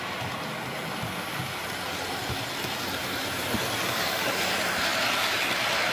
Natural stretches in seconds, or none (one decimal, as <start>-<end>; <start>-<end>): 0.0-3.0; 3.6-5.9

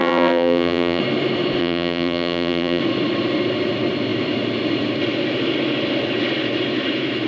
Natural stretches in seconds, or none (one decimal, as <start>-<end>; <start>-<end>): 1.0-1.6; 2.8-7.3

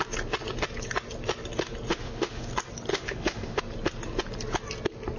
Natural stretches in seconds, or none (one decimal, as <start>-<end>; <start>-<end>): 0.0-1.9; 2.5-2.9; 3.6-5.2

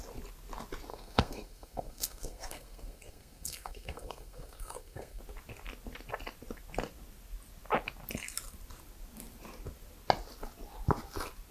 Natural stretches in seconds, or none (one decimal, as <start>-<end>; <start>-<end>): 0.0-0.9; 5.2-11.5

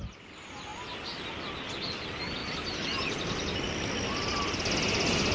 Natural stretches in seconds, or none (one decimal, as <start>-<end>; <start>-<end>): 0.0-5.3

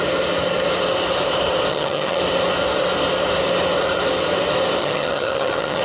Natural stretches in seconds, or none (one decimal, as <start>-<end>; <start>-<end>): 0.0-1.7; 2.2-4.8